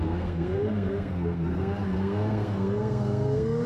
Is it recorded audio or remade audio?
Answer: remade